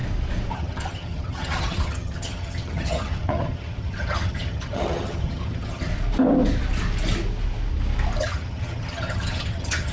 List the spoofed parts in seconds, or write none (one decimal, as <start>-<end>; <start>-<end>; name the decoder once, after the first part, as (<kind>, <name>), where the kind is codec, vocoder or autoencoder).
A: 0.5-5.9 (vocoder, HiFi-GAN); 8.2-9.9